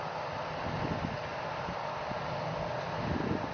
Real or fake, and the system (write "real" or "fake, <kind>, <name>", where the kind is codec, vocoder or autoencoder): real